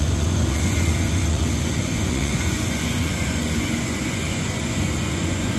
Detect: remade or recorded remade